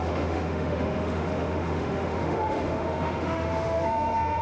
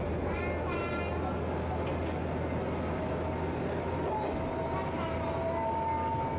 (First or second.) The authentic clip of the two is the second